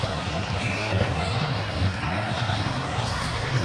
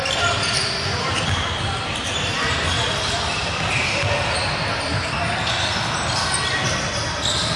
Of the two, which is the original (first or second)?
second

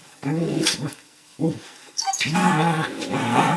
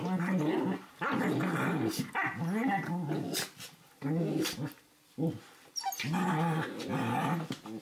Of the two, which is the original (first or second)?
second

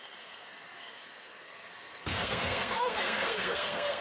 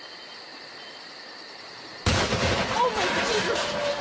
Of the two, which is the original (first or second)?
second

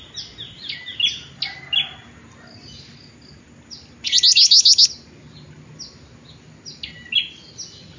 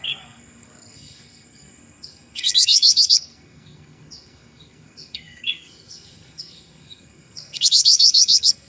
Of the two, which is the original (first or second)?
first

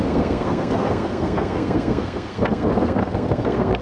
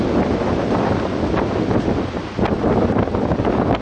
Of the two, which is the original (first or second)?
second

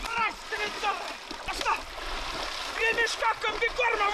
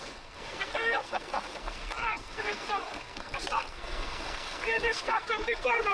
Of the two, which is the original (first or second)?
first